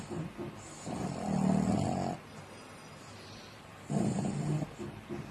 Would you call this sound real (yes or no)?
yes